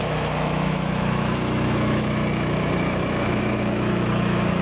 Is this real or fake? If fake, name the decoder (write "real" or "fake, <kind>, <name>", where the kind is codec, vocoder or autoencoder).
fake, autoencoder, DAC-VAE